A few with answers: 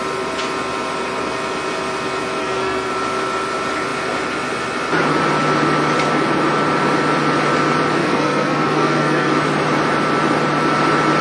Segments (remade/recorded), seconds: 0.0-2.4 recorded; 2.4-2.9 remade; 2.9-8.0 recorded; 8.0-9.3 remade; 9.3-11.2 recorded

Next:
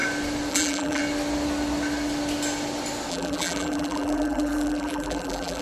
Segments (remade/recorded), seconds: 0.0-0.5 recorded; 0.5-1.0 remade; 1.0-3.1 recorded; 3.1-5.6 remade

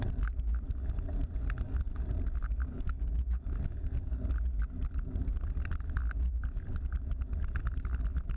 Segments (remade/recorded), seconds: 0.0-8.4 recorded